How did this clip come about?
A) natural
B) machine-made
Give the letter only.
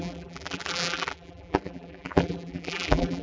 B